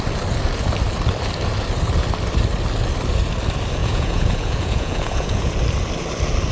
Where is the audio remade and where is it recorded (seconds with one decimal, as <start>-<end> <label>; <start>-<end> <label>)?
0.0-3.8 recorded; 3.8-5.6 remade; 5.6-6.5 recorded